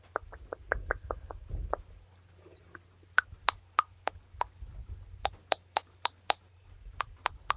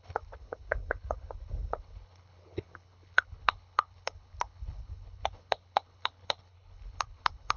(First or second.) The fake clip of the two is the second